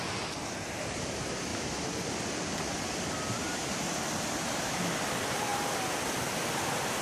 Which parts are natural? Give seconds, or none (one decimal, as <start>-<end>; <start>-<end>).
0.0-7.0